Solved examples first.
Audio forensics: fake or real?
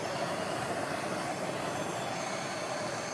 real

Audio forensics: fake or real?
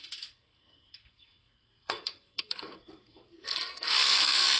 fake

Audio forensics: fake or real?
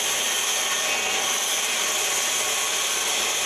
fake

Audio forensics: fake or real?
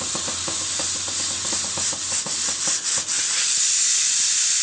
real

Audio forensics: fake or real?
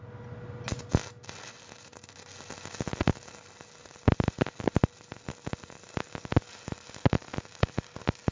real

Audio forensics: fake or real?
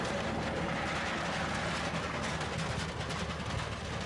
real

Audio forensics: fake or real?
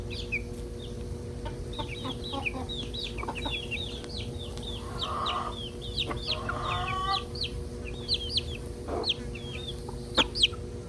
real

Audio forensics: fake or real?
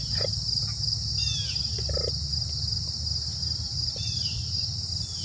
real